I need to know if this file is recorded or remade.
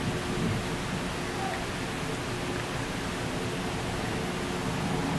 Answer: recorded